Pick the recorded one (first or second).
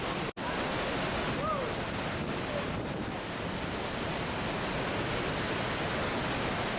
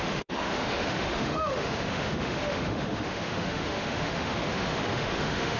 first